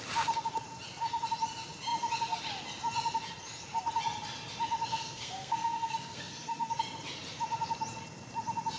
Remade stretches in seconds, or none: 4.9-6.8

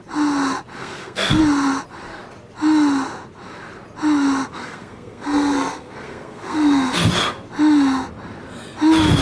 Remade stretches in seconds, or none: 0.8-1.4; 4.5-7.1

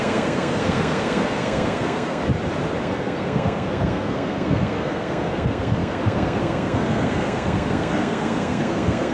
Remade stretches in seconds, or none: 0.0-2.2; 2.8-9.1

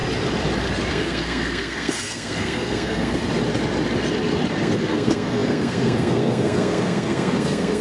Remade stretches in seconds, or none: 0.9-3.2; 4.6-7.8